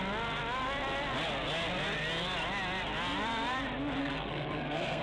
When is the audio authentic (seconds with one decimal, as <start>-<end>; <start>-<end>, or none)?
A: 0.0-4.0